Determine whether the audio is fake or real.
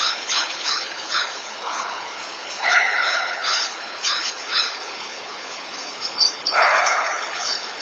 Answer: fake